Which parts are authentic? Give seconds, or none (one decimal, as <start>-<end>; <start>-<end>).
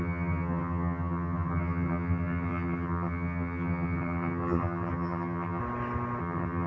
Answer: 5.6-6.2